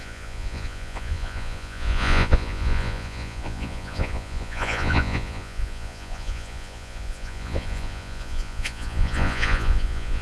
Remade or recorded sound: remade